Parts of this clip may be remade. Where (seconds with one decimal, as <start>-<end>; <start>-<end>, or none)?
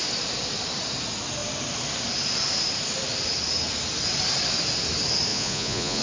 5.3-6.0